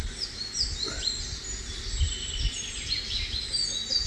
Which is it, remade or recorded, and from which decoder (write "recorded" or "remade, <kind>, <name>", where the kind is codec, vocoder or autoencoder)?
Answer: recorded